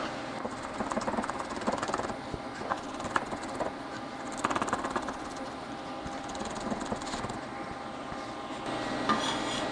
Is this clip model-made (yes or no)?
no